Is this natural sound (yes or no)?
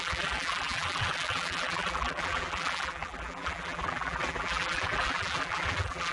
no